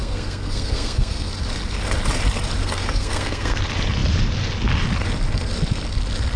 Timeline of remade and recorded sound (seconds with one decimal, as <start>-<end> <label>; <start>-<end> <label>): 0.0-1.3 remade; 1.3-2.6 recorded; 2.6-3.6 remade; 3.6-6.4 recorded